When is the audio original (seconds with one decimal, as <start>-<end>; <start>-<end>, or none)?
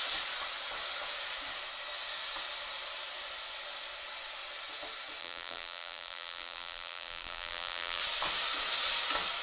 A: 0.0-5.2; 8.0-9.4